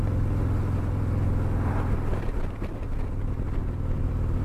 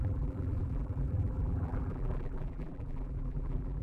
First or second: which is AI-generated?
second